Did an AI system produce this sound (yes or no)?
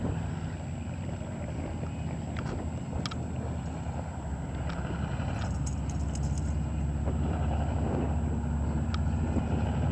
no